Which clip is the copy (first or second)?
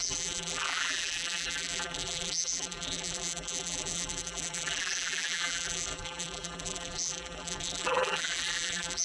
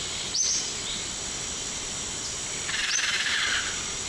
first